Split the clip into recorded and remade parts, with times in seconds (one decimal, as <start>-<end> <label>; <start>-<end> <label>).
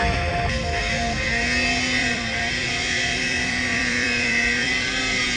0.0-2.0 recorded; 2.0-5.0 remade; 5.0-5.4 recorded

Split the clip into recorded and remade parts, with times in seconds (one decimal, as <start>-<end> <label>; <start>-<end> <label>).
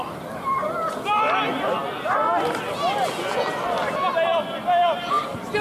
0.0-5.6 recorded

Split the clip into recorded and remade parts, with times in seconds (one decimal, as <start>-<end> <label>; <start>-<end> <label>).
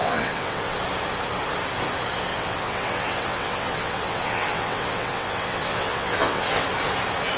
0.0-0.8 remade; 0.8-2.3 recorded; 2.3-6.7 remade; 6.7-7.4 recorded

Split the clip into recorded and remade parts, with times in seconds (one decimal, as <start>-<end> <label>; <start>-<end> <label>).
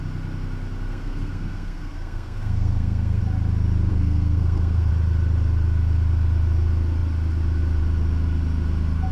0.0-0.9 recorded; 0.9-3.2 remade; 3.2-3.9 recorded; 3.9-4.9 remade; 4.9-9.1 recorded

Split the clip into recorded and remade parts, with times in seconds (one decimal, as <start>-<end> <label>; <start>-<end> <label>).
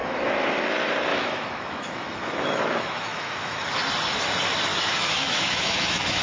0.0-0.7 remade; 0.7-1.1 recorded; 1.1-3.7 remade; 3.7-4.7 recorded; 4.7-6.2 remade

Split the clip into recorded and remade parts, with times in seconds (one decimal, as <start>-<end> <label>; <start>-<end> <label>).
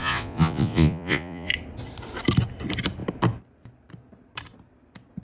0.0-1.5 remade; 1.5-5.2 recorded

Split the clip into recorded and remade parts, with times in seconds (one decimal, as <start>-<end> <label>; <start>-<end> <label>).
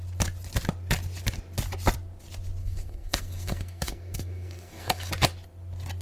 0.0-2.6 recorded; 2.6-5.1 remade; 5.1-6.0 recorded